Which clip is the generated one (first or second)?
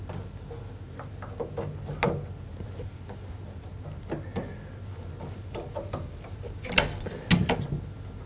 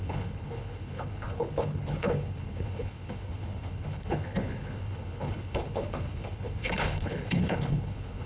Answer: second